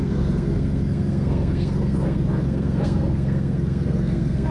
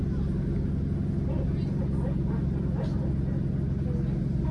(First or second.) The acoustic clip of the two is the second